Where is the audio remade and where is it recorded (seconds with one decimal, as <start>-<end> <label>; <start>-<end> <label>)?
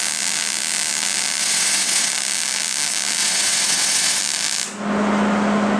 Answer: 0.0-1.4 recorded; 1.4-2.1 remade; 2.1-3.2 recorded; 3.2-4.2 remade; 4.2-5.8 recorded